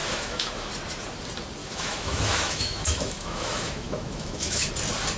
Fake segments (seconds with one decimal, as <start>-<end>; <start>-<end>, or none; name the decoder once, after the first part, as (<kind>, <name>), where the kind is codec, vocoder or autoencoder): 0.0-0.7 (autoencoder, DAC-VAE); 1.6-4.7